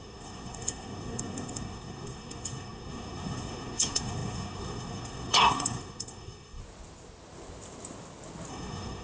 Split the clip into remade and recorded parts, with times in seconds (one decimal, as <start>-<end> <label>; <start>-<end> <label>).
0.0-6.6 remade; 6.6-8.5 recorded; 8.5-9.0 remade